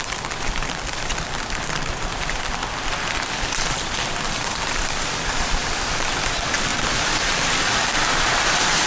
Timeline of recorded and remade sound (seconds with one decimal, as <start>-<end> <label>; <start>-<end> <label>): 0.0-6.7 remade; 6.7-7.2 recorded; 7.2-8.9 remade